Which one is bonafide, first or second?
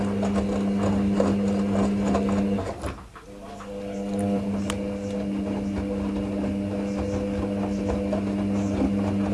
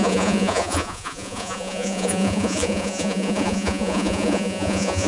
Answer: first